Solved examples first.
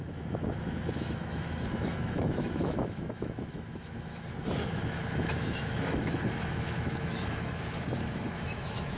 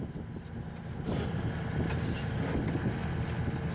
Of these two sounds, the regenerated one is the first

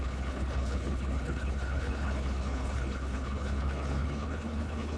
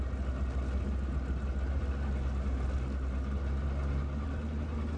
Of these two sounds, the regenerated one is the first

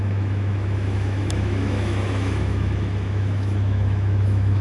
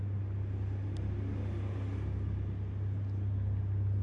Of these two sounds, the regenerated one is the first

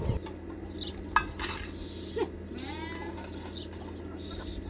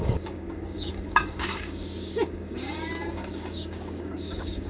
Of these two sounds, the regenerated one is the second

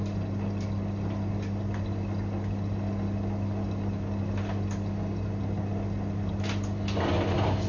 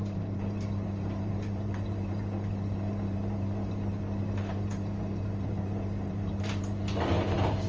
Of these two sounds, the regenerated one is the second